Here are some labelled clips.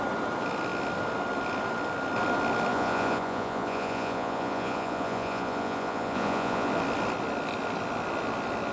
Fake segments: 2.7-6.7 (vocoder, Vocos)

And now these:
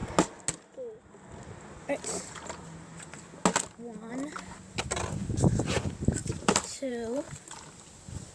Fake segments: 6.2-7.2 (vocoder, BigVGAN v2)

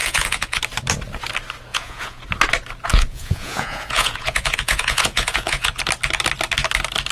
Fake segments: 0.0-0.6 (vocoder, Vocos); 1.7-2.2; 2.9-5.8